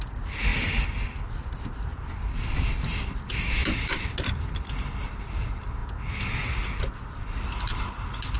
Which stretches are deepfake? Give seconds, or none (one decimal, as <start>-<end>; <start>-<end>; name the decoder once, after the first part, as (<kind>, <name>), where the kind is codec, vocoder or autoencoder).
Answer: none